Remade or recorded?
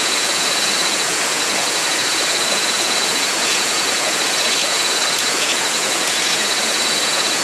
remade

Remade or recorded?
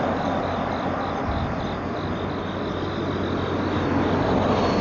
recorded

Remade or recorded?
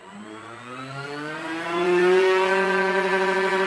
remade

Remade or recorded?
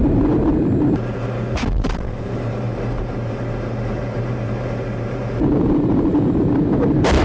remade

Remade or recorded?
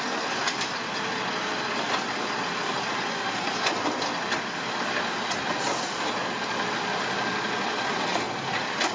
recorded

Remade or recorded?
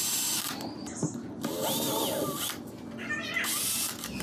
recorded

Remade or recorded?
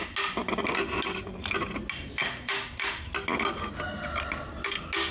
recorded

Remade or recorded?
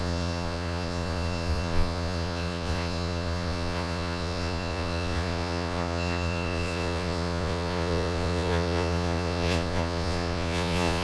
remade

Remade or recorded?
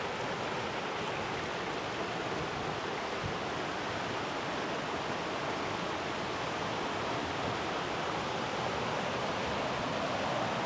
recorded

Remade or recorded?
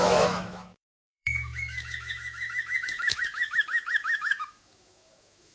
remade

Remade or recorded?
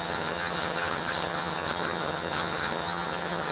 remade